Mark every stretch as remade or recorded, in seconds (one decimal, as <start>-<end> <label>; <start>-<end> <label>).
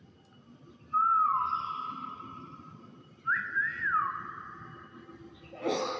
0.0-6.0 recorded